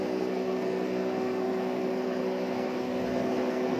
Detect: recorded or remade remade